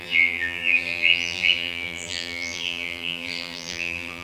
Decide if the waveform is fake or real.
fake